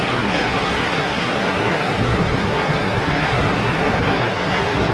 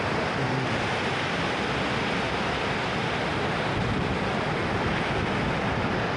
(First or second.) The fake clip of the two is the first